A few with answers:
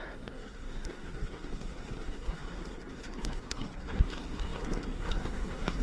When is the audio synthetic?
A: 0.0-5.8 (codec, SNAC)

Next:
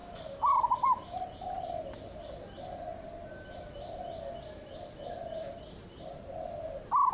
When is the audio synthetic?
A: none

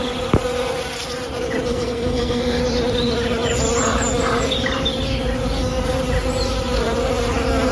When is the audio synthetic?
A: 1.7-2.6 (codec, SNAC)

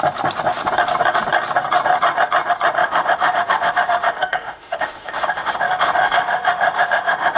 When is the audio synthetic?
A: 2.8-7.4 (autoencoder, DAC-VAE)

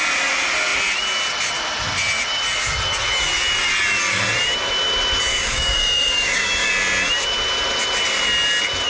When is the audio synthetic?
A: 5.3-6.7 (codec, DAC)

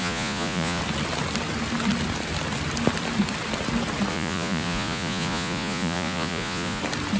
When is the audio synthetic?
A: 0.0-0.8 (vocoder, Vocos); 4.1-6.8